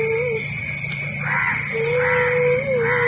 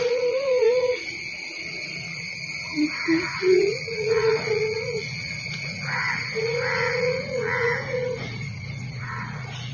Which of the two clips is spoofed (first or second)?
second